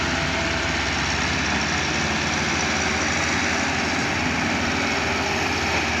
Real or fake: real